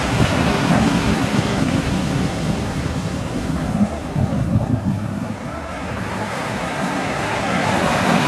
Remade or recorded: remade